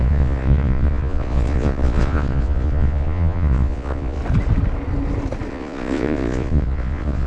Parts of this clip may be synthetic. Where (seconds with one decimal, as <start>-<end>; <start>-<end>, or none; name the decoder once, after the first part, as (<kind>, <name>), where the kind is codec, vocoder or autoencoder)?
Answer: 0.0-4.2 (vocoder, Vocos); 5.5-7.3